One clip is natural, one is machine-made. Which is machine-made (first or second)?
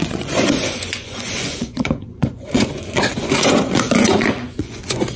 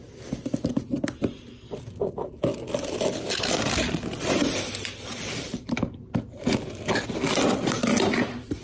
first